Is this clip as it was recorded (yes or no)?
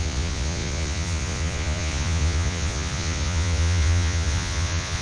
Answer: no